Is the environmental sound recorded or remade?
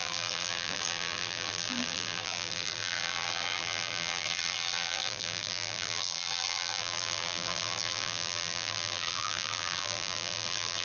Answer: remade